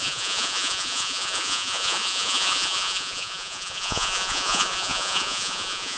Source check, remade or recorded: remade